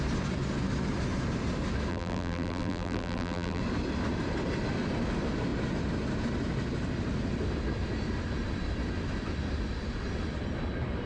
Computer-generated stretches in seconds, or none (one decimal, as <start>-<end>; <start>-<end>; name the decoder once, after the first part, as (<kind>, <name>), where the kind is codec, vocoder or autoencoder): 1.9-3.6 (vocoder, BigVGAN v2)